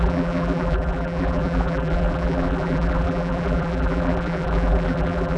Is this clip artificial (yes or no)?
yes